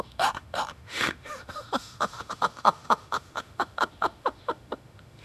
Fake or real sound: fake